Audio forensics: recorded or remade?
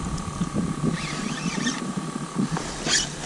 recorded